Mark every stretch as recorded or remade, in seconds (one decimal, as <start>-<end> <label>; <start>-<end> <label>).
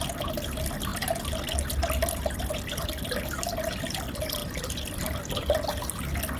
0.0-6.4 recorded